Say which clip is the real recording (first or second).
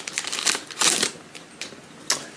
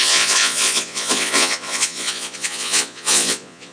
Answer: first